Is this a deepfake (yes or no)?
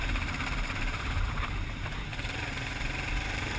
yes